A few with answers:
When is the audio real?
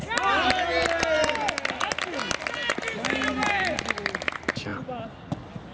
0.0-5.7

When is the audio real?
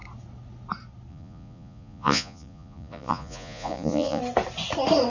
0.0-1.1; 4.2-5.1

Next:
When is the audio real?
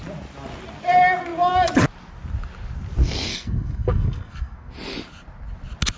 0.0-3.3; 4.7-6.0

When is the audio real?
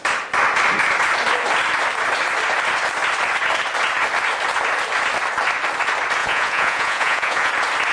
0.0-6.2; 7.5-7.9